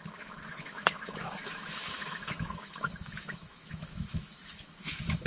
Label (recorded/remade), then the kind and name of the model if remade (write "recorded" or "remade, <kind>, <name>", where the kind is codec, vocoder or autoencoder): remade, autoencoder, DAC-VAE